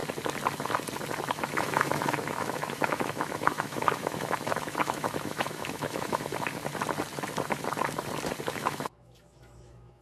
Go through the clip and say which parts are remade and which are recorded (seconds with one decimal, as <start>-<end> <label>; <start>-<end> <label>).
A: 0.0-1.3 recorded; 1.3-6.6 remade; 6.6-8.5 recorded; 8.5-10.0 remade